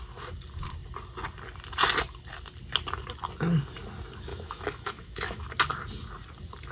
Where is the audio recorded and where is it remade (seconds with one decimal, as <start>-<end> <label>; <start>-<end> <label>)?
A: 0.0-4.3 recorded; 4.3-5.5 remade; 5.5-6.7 recorded